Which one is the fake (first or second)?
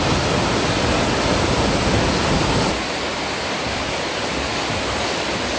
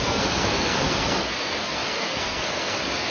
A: second